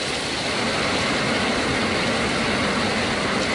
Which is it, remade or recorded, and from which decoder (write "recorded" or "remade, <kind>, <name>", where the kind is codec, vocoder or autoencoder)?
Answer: recorded